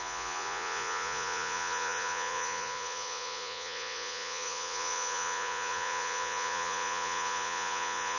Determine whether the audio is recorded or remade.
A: remade